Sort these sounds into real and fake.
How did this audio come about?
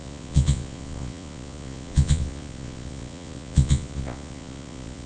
fake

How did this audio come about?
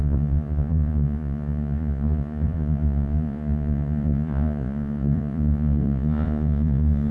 fake